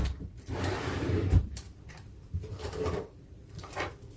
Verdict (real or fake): fake